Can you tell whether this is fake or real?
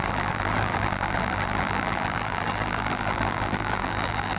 fake